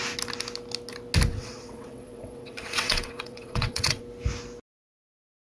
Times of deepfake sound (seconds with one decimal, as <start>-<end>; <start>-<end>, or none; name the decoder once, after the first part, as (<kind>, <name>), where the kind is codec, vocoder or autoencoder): 1.3-4.0 (vocoder, WaveNeXt)